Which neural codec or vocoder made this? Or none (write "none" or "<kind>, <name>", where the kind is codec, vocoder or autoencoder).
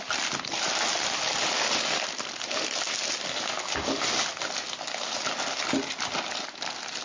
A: none